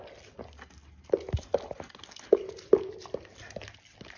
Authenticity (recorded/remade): recorded